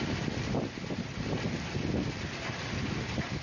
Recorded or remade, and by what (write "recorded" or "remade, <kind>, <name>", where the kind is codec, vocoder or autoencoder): recorded